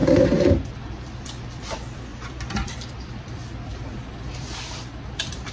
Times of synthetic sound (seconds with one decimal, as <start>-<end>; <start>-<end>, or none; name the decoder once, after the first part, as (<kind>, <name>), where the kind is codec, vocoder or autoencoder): 0.5-3.7 (vocoder, BigVGAN v2); 4.3-5.5